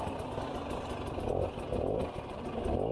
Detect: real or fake real